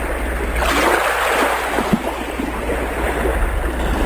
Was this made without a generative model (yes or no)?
yes